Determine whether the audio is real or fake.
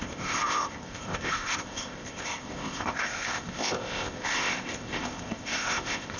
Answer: fake